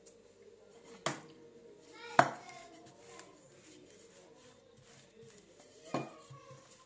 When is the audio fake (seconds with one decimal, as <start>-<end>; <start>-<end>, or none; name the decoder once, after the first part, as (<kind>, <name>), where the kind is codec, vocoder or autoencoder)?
none